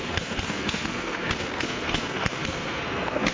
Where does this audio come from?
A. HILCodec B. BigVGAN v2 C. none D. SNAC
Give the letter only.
D